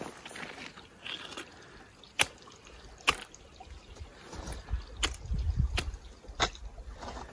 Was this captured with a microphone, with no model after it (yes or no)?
yes